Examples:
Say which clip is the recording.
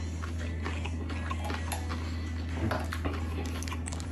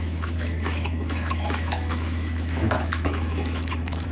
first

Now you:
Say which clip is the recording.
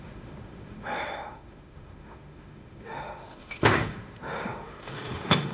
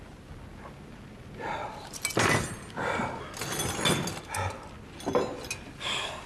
second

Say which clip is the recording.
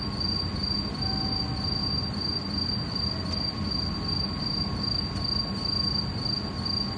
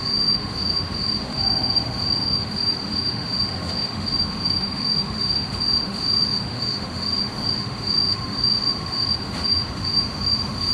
first